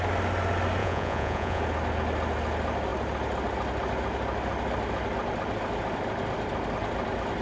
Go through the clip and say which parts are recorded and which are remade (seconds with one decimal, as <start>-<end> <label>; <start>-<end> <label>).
0.0-0.8 recorded; 0.8-1.6 remade; 1.6-7.4 recorded